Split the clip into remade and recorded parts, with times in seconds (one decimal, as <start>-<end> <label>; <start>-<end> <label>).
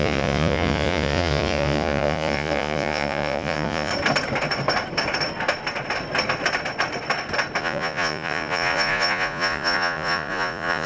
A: 0.0-3.9 remade; 3.9-7.6 recorded; 7.6-10.9 remade